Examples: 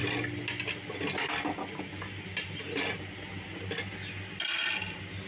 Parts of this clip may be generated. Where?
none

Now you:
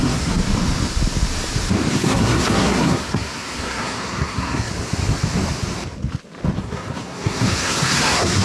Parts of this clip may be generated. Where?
0.0-0.4 (codec, SNAC); 1.9-4.7; 6.6-8.4

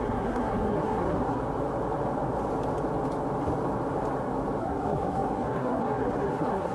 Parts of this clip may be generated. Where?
0.0-1.4 (codec, SNAC); 4.6-6.7

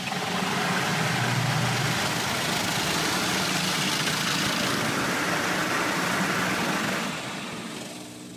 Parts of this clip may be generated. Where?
none